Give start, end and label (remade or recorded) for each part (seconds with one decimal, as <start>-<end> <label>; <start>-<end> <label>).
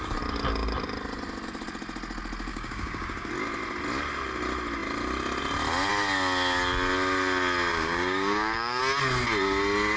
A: 0.0-2.5 recorded; 2.5-3.3 remade; 3.3-7.7 recorded; 7.7-8.8 remade; 8.8-10.0 recorded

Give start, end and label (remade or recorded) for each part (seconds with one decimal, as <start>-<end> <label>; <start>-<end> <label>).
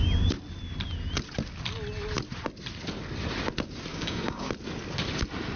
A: 0.0-3.9 recorded; 3.9-4.5 remade; 4.5-5.6 recorded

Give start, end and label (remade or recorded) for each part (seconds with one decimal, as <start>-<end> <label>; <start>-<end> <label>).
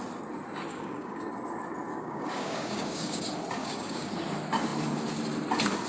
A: 0.0-0.7 recorded; 0.7-1.2 remade; 1.2-1.9 recorded; 1.9-3.2 remade; 3.2-3.6 recorded; 3.6-4.1 remade; 4.1-5.9 recorded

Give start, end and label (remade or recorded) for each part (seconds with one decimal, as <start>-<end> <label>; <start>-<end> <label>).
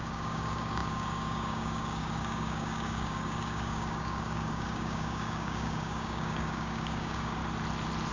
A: 0.0-7.4 remade; 7.4-8.1 recorded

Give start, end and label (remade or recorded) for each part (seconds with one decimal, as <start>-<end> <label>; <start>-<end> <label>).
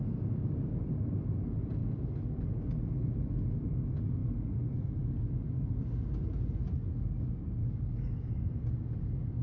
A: 0.0-7.6 recorded; 7.6-8.3 remade; 8.3-9.4 recorded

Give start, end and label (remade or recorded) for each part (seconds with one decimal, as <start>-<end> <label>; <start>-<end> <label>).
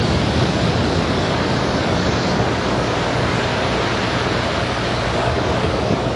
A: 0.0-3.5 remade; 3.5-4.6 recorded; 4.6-6.2 remade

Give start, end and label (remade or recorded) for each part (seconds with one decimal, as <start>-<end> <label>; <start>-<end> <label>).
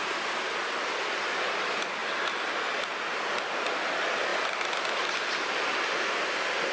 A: 0.0-6.7 recorded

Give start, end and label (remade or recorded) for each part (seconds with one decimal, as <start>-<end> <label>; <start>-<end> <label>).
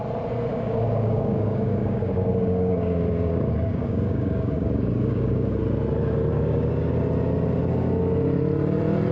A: 0.0-0.5 recorded; 0.5-5.6 remade; 5.6-6.3 recorded; 6.3-6.9 remade; 6.9-9.1 recorded